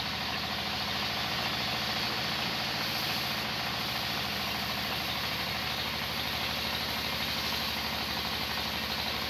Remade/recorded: recorded